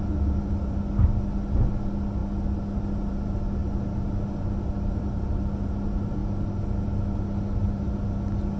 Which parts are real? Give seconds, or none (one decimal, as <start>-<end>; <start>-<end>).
0.0-8.6